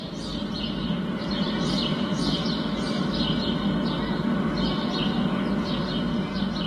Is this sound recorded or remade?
recorded